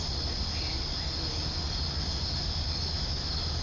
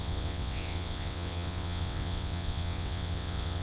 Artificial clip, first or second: second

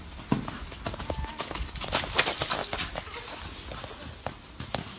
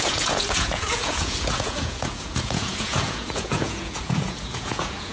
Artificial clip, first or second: second